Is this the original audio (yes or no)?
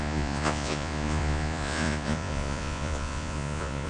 no